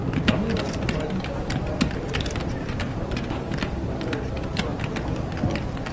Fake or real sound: real